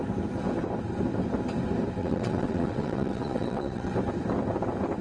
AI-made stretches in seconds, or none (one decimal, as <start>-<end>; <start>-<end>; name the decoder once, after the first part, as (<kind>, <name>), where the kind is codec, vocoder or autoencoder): 2.0-3.9 (vocoder, WaveNeXt)